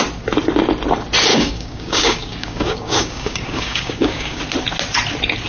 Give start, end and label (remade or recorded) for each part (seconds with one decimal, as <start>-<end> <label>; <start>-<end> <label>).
0.0-1.3 recorded; 1.3-4.4 remade; 4.4-5.5 recorded